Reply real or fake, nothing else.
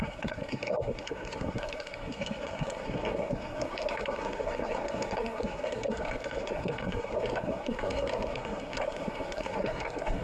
fake